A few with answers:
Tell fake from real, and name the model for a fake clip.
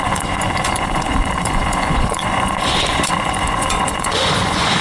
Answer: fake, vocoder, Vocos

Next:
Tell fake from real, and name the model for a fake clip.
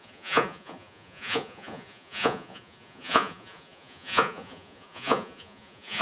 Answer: fake, vocoder, Vocos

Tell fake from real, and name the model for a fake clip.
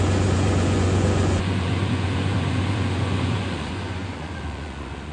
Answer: fake, vocoder, Vocos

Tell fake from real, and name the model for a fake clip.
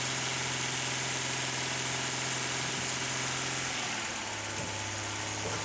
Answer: real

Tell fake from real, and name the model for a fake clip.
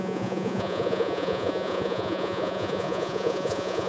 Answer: fake, vocoder, Vocos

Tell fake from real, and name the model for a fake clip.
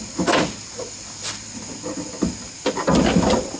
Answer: real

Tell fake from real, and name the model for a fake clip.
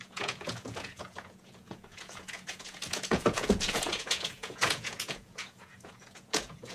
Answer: fake, vocoder, Vocos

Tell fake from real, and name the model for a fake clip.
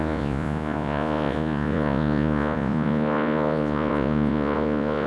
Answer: fake, vocoder, Vocos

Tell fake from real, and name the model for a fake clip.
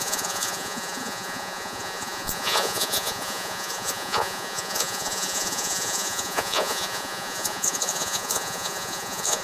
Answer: fake, vocoder, Vocos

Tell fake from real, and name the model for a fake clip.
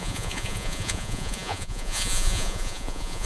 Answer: fake, vocoder, Vocos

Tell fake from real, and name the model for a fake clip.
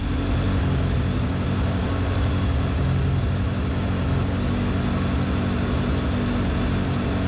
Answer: real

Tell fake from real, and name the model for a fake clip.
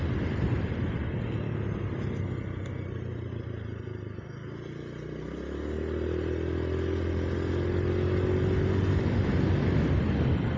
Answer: real